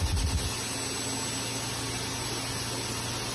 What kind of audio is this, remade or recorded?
recorded